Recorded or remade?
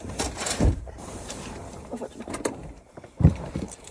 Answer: remade